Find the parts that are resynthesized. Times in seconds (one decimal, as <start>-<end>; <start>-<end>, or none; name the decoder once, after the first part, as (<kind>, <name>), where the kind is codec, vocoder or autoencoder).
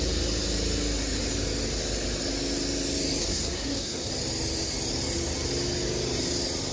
3.2-4.1 (codec, SNAC)